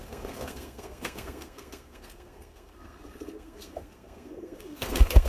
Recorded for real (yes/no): no